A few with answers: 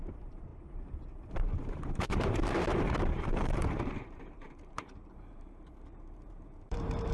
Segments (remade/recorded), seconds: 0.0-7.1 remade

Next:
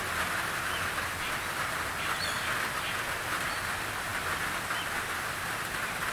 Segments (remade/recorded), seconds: 0.0-6.1 recorded

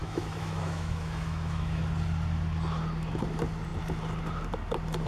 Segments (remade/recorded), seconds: 0.0-1.8 remade; 1.8-5.1 recorded

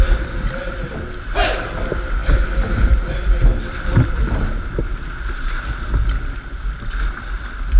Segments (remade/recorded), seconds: 0.0-7.8 recorded

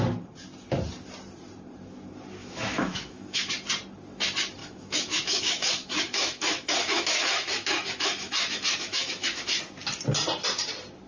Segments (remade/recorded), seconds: 0.0-2.4 recorded; 2.4-3.5 remade; 3.5-4.6 recorded; 4.6-9.6 remade; 9.6-11.1 recorded

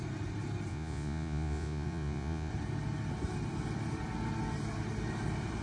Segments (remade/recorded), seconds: 0.0-0.7 recorded; 0.7-2.5 remade; 2.5-5.6 recorded

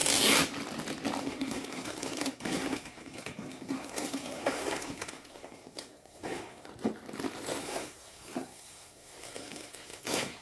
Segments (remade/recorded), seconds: 0.0-1.2 recorded; 1.2-6.7 remade; 6.7-7.6 recorded; 7.6-10.4 remade